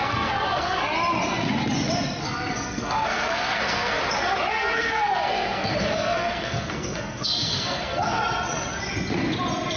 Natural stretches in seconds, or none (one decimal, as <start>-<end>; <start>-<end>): 0.8-2.2; 4.0-4.5; 8.2-9.8